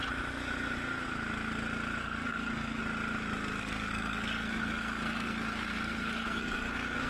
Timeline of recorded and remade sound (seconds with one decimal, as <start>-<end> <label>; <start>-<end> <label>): 0.0-2.0 recorded; 2.0-2.8 remade; 2.8-3.6 recorded; 3.6-7.1 remade